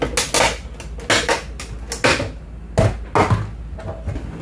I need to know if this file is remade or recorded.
recorded